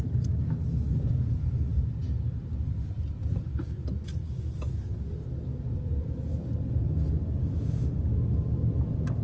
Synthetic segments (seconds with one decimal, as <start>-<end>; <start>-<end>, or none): 7.4-8.0